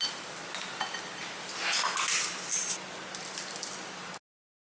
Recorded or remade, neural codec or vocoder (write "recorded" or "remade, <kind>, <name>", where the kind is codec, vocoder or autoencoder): recorded